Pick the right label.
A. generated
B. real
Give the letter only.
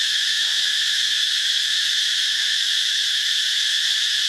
A